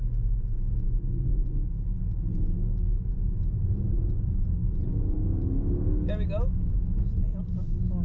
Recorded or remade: recorded